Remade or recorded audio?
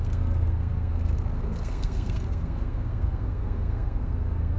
remade